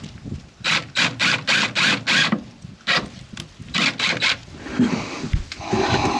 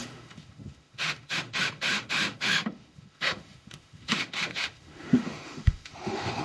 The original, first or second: first